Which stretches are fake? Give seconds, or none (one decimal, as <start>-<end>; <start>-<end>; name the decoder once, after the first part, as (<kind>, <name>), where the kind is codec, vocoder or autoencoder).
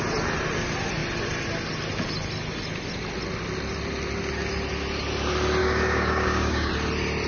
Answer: 5.6-6.7 (codec, DAC)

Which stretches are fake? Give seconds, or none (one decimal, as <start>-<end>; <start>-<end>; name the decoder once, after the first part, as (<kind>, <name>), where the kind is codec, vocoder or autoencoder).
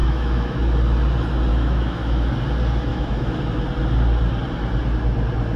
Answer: 0.0-0.6 (autoencoder, DAC-VAE); 1.5-2.3; 2.9-3.4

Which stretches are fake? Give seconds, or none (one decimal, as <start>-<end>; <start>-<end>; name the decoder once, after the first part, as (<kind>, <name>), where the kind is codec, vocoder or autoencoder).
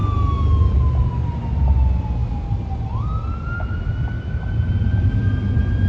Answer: none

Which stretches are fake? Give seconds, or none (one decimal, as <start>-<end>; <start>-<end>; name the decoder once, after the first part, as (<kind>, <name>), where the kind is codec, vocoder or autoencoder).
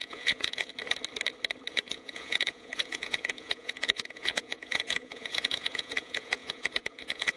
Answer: 0.0-0.7 (vocoder, Vocos); 1.7-7.4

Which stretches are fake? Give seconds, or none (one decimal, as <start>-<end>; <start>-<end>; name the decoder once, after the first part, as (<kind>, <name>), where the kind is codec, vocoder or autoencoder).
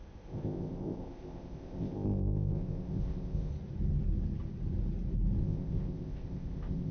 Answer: 0.0-3.5 (codec, ZipCodec); 5.4-6.9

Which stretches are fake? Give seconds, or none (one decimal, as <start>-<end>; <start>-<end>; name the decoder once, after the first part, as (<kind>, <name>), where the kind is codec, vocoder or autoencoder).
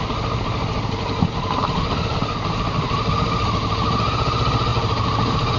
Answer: 4.7-5.6 (vocoder, BigVGAN v2)